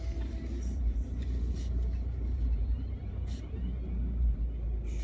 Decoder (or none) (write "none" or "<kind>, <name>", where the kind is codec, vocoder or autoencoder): none